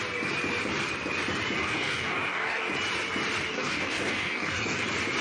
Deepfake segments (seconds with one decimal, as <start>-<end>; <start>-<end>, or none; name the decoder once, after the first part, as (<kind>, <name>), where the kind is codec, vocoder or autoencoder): 1.6-2.7 (codec, DAC); 3.5-4.8